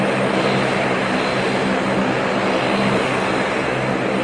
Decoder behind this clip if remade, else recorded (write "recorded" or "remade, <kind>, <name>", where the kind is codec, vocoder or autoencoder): recorded